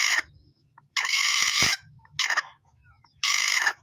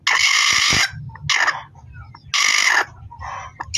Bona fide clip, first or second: second